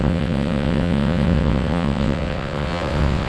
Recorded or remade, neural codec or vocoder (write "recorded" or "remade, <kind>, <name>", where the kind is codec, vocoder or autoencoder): remade, vocoder, WaveNeXt